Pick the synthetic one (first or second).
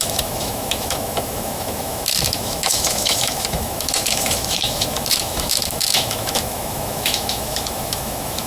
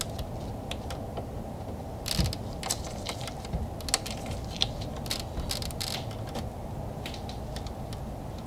first